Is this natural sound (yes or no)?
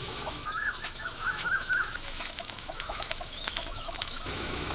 no